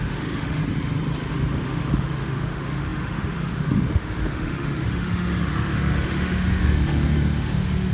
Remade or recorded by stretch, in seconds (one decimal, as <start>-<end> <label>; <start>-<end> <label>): 0.0-0.6 remade; 0.6-1.3 recorded; 1.3-7.9 remade